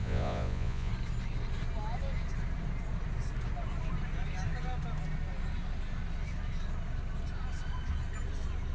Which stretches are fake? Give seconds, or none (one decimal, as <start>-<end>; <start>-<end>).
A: 0.0-0.9